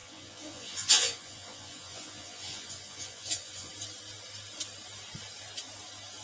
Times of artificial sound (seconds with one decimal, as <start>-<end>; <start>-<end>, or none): 0.0-3.7